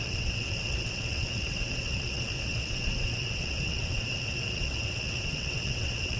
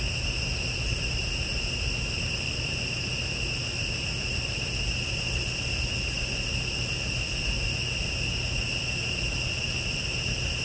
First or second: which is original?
second